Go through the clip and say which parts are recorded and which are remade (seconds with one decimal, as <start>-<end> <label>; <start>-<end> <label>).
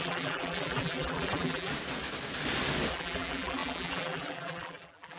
0.0-1.7 remade; 1.7-2.9 recorded; 2.9-5.2 remade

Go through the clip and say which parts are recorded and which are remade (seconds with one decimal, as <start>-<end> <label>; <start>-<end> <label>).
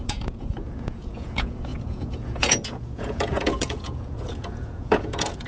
0.0-5.5 remade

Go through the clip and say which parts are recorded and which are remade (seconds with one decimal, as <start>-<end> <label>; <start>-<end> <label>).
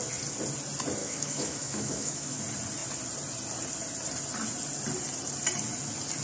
0.0-1.0 recorded; 1.0-2.4 remade; 2.4-6.2 recorded